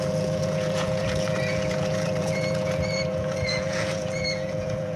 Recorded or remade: remade